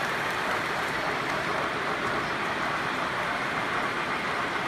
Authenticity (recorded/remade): remade